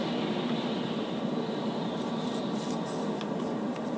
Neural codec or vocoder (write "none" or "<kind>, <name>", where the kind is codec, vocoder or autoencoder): none